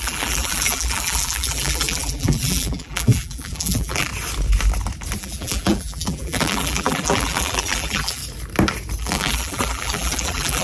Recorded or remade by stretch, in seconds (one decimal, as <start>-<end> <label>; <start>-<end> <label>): 0.0-4.1 remade; 4.1-5.2 recorded; 5.2-8.2 remade; 8.2-9.0 recorded; 9.0-10.6 remade

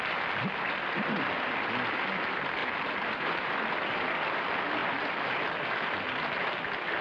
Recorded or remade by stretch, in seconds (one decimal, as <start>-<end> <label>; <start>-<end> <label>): 0.0-2.6 recorded; 2.6-3.5 remade; 3.5-7.0 recorded

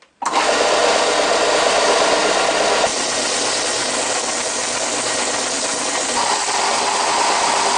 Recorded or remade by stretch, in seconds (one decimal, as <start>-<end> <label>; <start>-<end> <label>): 0.0-7.8 recorded